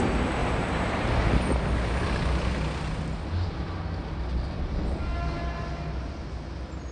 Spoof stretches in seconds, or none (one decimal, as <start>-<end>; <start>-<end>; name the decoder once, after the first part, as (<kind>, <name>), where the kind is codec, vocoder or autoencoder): 0.4-1.1 (vocoder, BigVGAN v2)